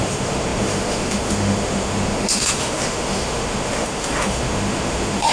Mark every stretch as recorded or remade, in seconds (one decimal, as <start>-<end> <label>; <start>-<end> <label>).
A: 0.0-5.3 remade